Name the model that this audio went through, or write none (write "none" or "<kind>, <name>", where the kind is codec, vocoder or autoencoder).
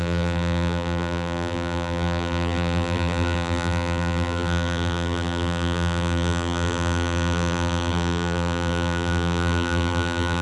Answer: vocoder, BigVGAN v2